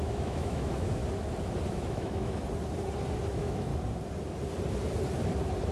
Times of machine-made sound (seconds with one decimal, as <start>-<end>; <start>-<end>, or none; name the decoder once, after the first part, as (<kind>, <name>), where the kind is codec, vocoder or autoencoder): 0.0-1.0 (autoencoder, DAC-VAE); 1.7-2.4; 3.3-3.7